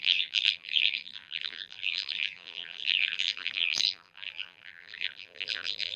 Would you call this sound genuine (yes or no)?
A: no